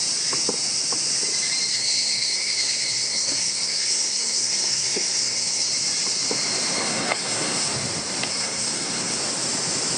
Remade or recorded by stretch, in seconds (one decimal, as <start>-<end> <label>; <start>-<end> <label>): 0.0-1.7 recorded; 1.7-5.7 remade; 5.7-6.8 recorded; 6.8-7.7 remade; 7.7-8.3 recorded; 8.3-9.2 remade; 9.2-10.0 recorded